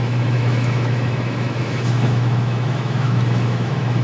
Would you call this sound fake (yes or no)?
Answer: yes